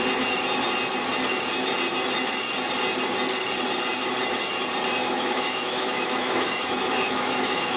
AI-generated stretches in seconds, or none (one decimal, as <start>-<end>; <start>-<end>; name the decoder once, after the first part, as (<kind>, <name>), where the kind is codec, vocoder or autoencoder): 5.0-7.8 (autoencoder, DAC-VAE)